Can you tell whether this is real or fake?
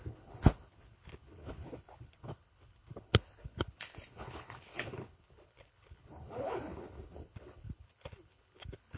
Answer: fake